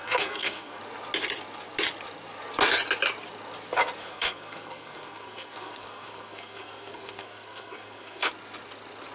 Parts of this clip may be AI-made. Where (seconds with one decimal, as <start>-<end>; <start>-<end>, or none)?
0.0-0.8; 4.0-8.3